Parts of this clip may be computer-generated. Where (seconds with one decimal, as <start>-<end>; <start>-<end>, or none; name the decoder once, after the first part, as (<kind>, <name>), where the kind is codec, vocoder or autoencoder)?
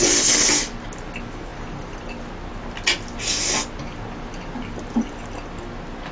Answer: none